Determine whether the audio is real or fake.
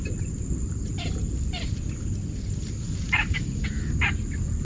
real